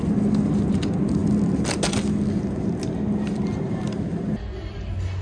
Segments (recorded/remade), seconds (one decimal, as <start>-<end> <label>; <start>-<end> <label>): 0.0-5.2 recorded